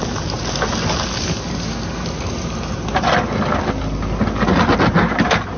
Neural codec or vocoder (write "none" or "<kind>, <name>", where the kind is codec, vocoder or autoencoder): none